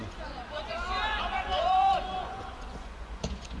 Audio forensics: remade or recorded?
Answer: remade